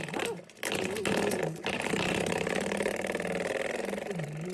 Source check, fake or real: real